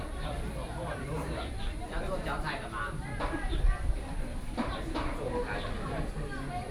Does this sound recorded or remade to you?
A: remade